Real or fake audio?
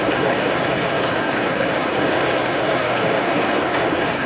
fake